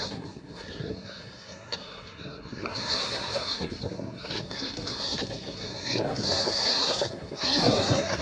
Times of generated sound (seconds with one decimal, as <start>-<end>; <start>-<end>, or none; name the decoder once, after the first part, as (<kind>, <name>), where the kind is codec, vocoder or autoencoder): 0.0-8.2 (codec, SNAC)